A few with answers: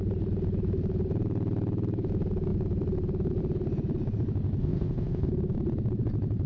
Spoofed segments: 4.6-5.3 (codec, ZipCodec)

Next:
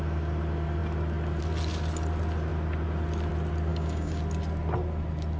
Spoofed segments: 3.7-4.2 (codec, DAC)

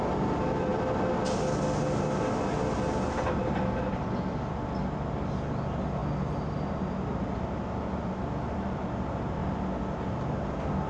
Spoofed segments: none

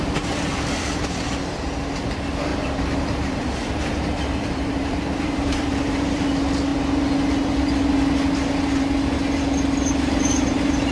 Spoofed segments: 2.5-6.2 (vocoder, BigVGAN v2)

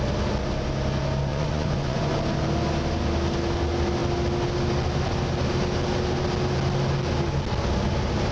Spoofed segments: 1.3-2.1 (vocoder, Vocos)